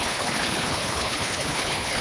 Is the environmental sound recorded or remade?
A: remade